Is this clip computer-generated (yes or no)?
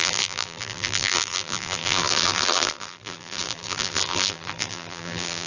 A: yes